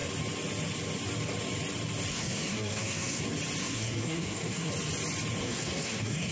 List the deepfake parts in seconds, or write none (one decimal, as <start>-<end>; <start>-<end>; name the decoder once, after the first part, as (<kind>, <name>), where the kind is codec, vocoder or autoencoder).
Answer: 2.1-3.2 (codec, SNAC); 3.6-4.7; 5.4-6.3